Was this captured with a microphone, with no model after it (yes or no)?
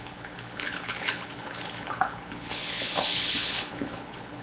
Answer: no